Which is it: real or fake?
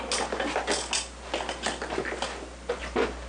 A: real